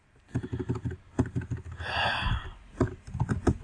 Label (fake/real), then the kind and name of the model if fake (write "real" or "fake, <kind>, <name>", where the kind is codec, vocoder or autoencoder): real